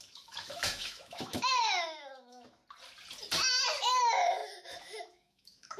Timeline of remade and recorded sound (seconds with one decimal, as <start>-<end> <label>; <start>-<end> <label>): 0.0-2.6 remade; 2.6-4.0 recorded; 4.0-5.8 remade